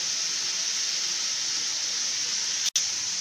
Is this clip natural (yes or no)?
yes